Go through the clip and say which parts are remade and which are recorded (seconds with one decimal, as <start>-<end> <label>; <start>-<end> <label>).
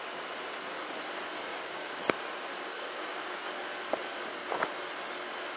0.0-1.5 recorded; 1.5-2.0 remade; 2.0-2.5 recorded; 2.5-3.6 remade; 3.6-5.6 recorded